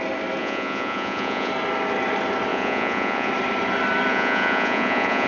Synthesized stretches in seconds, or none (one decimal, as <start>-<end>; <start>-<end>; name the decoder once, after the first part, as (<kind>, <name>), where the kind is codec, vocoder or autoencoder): 0.4-1.5 (vocoder, Vocos); 2.5-3.3; 4.1-5.3